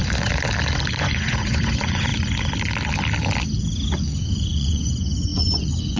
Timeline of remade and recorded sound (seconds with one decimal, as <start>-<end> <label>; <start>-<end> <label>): 0.0-1.0 recorded; 1.0-2.1 remade; 2.1-3.9 recorded; 3.9-6.0 remade